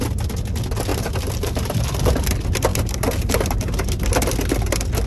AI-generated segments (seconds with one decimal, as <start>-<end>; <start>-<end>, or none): 0.9-1.8; 2.7-3.9